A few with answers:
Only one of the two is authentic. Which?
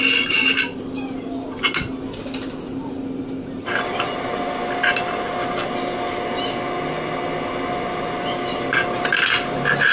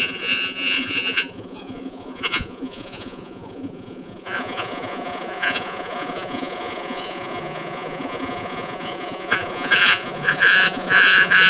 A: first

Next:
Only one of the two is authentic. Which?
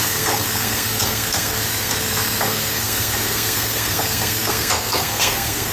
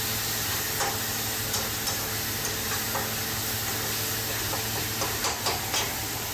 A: second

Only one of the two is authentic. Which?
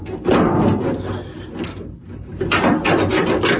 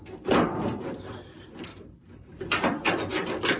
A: first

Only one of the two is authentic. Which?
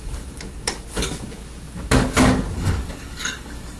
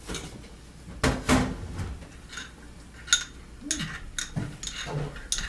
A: second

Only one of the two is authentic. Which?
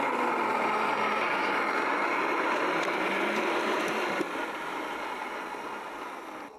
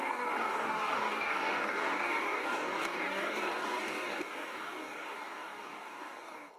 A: first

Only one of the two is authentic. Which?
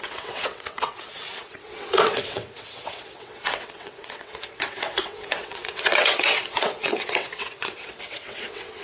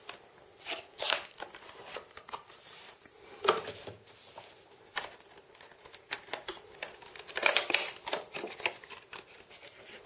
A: second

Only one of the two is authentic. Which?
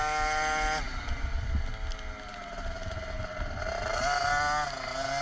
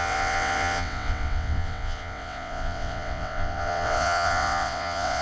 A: first